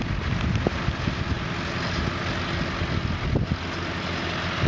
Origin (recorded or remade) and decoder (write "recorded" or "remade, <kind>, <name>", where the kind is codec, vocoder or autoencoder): recorded